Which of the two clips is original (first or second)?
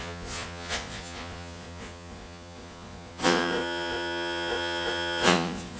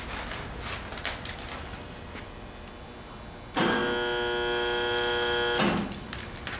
second